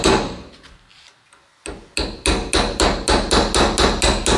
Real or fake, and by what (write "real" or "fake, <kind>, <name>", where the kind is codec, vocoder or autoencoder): real